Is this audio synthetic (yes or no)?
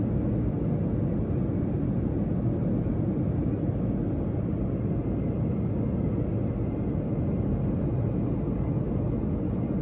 no